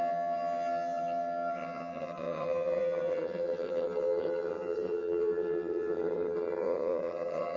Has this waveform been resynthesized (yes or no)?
yes